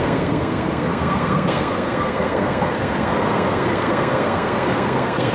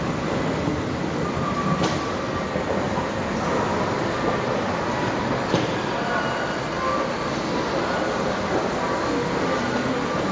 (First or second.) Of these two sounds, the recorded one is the second